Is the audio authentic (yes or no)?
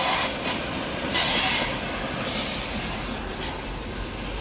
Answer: yes